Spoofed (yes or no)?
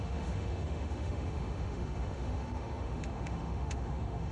yes